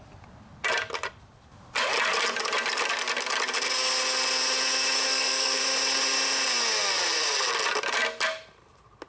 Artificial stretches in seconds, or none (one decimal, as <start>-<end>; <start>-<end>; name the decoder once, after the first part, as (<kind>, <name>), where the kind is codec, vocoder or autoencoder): 5.1-5.6 (codec, SNAC)